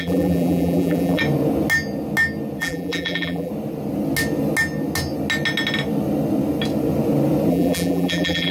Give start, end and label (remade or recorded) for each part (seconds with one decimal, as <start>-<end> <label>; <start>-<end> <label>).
0.0-1.2 remade; 1.2-2.6 recorded; 2.6-3.5 remade; 3.5-7.5 recorded; 7.5-8.5 remade